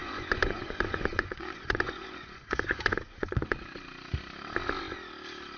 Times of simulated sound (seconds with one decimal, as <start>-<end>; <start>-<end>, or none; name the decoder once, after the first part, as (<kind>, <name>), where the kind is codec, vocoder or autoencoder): 0.0-3.4 (vocoder, Vocos)